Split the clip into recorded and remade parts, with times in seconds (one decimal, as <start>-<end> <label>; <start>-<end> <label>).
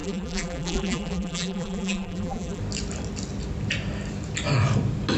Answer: 0.0-2.6 remade; 2.6-5.2 recorded